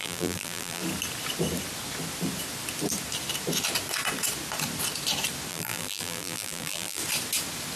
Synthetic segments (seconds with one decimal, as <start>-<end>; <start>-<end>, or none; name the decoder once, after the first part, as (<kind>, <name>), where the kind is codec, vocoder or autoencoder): 0.0-0.8 (vocoder, BigVGAN v2); 5.5-7.0